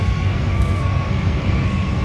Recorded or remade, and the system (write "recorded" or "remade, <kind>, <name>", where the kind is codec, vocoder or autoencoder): remade, codec, SNAC